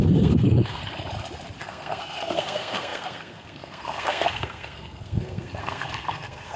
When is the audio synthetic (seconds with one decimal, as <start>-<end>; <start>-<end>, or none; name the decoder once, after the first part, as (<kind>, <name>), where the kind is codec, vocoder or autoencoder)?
0.0-0.8 (codec, SNAC); 1.6-6.6